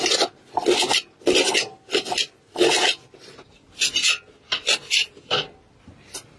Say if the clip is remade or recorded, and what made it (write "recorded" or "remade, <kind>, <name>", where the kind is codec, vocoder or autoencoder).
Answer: recorded